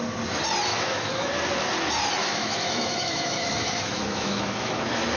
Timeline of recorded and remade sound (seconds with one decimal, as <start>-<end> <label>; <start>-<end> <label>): 0.0-0.7 recorded; 0.7-1.3 remade; 1.3-2.2 recorded; 2.2-4.8 remade; 4.8-5.2 recorded